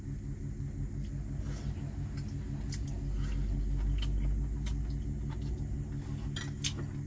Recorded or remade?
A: recorded